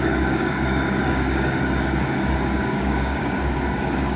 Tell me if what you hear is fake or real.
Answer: fake